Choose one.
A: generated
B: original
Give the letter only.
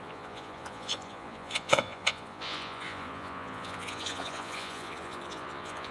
A